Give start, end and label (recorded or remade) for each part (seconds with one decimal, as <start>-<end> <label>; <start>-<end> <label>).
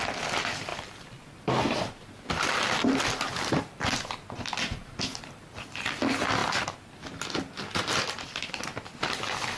0.0-0.7 recorded; 0.7-3.6 remade; 3.6-9.6 recorded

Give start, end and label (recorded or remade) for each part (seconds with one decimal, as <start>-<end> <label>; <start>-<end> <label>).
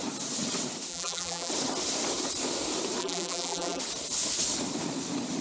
0.0-0.9 recorded; 0.9-1.5 remade; 1.5-3.0 recorded; 3.0-3.8 remade; 3.8-5.4 recorded